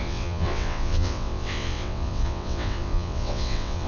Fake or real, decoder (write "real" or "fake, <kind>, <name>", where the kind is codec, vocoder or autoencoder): fake, vocoder, WaveNeXt